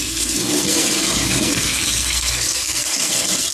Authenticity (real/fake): fake